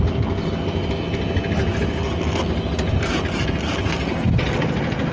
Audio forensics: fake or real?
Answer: real